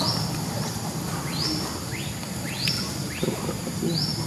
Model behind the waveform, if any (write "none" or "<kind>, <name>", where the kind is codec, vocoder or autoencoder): none